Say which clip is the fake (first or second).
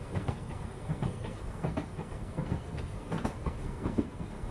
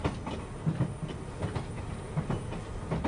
first